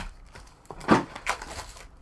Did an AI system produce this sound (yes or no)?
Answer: yes